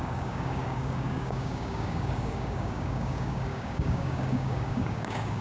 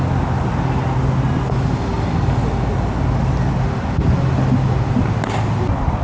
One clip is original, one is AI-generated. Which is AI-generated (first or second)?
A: first